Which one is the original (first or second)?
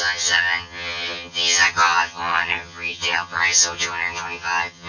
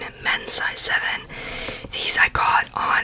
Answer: second